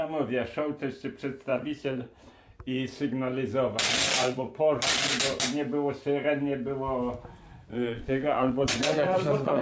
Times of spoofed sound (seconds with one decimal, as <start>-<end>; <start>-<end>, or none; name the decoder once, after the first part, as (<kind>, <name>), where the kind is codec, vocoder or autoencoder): 1.5-2.3 (vocoder, Vocos); 4.2-4.8; 7.5-9.6

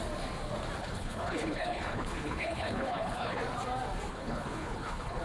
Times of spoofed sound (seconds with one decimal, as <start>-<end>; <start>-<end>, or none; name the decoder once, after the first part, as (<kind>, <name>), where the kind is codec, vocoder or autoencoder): 0.8-3.4 (codec, HILCodec); 4.1-5.2

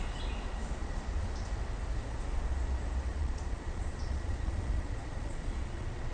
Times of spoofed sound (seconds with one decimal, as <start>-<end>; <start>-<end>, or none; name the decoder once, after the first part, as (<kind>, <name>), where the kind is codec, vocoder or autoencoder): 0.8-1.3 (vocoder, Vocos); 3.1-6.1

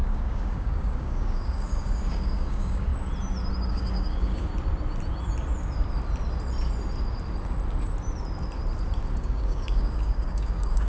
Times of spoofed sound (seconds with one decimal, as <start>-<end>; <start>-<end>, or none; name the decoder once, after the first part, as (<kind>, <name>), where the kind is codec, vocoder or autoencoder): 0.0-2.9 (codec, DAC); 3.7-4.5; 9.2-10.9

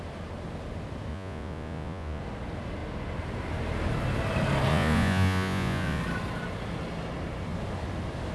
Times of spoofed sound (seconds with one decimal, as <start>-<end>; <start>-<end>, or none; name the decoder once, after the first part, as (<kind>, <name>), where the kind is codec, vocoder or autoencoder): 1.1-2.2 (vocoder, Vocos); 4.7-6.0

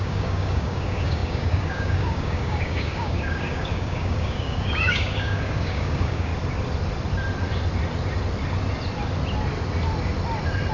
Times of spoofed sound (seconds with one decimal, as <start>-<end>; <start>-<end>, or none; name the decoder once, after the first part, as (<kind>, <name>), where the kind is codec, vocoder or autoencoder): 0.0-6.3 (codec, DAC)

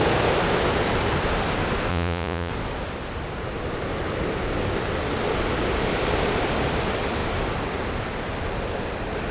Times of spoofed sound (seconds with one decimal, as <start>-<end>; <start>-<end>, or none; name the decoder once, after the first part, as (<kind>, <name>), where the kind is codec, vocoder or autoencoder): 1.9-2.5 (vocoder, Vocos)

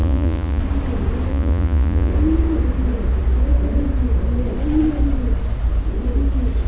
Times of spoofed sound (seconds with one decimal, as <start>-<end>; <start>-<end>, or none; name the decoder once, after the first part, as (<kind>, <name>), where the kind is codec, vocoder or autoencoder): 0.0-0.6 (vocoder, Vocos); 1.3-2.1